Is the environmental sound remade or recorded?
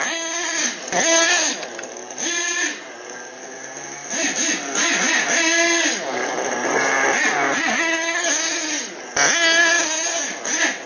recorded